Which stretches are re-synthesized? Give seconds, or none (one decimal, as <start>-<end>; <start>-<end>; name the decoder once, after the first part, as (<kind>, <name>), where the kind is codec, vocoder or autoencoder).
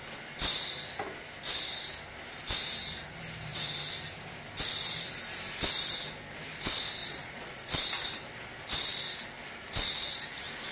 7.0-7.8 (vocoder, Vocos)